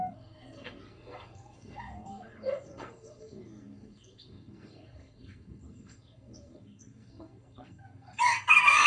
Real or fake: fake